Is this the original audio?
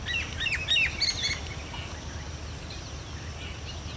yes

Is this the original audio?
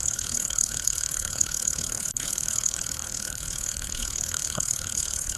no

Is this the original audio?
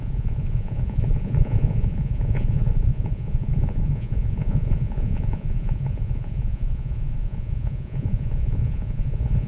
no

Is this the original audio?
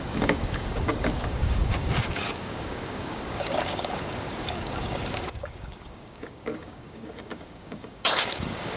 no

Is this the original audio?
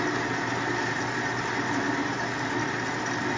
yes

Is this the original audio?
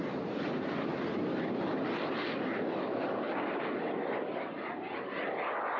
yes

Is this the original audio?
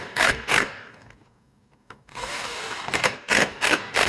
no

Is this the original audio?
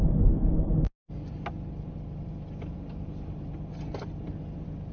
yes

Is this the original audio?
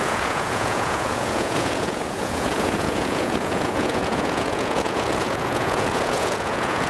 no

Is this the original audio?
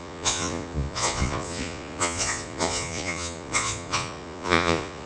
no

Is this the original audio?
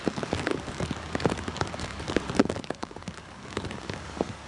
no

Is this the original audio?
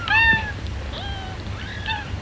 yes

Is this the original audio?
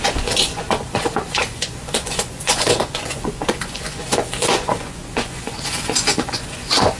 no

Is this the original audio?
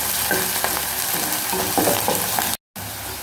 yes